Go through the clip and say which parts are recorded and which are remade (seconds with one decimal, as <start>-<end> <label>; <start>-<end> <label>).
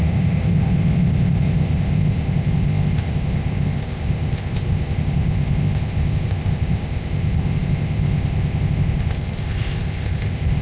0.0-10.6 remade